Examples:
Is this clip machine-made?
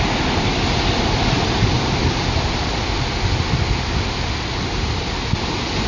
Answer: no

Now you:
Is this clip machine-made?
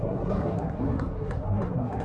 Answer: yes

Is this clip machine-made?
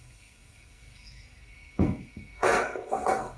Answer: yes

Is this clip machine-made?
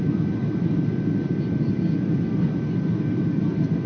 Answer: no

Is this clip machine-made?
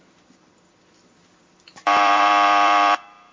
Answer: yes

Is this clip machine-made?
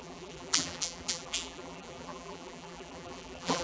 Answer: yes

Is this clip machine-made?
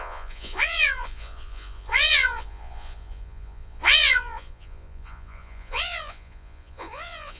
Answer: yes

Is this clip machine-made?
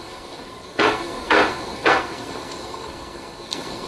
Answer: yes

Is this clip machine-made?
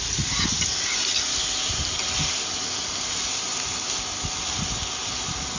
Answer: no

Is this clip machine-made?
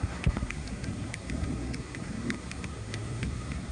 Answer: yes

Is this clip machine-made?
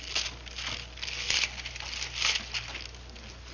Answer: no